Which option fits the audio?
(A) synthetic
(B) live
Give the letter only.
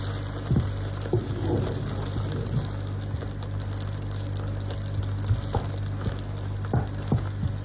B